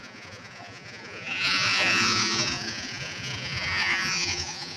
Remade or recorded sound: remade